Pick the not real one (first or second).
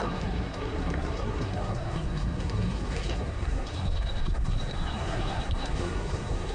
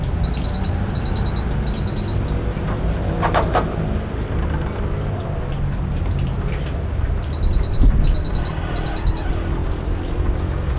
first